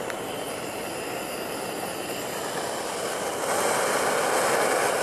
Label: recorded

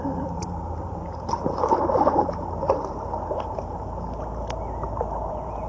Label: remade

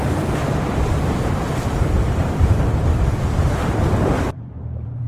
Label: remade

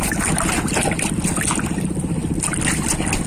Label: recorded